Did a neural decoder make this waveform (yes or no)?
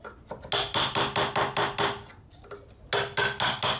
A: no